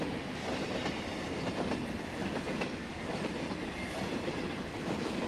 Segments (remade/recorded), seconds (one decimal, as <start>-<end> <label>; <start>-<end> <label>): 0.0-5.3 recorded